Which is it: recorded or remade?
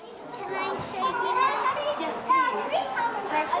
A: recorded